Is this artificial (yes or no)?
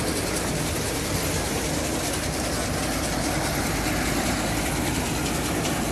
no